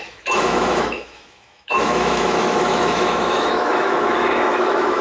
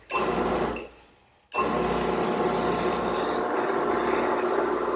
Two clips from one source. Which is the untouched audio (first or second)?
second